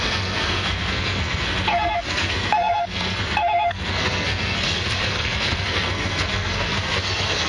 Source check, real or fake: fake